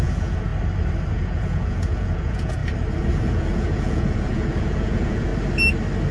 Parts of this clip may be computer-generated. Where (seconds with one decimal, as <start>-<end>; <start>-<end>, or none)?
0.0-0.5; 1.1-2.6; 3.1-5.3